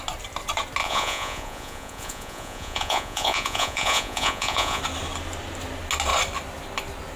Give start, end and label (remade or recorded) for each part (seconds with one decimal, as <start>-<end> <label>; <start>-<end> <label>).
0.0-0.8 recorded; 0.8-4.8 remade; 4.8-7.2 recorded